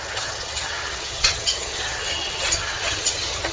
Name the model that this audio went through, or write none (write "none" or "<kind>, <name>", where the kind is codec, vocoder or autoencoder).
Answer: vocoder, HiFi-GAN